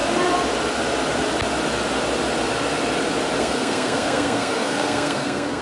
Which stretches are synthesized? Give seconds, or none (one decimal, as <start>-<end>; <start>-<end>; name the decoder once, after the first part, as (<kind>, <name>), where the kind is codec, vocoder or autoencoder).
3.4-5.6 (codec, SNAC)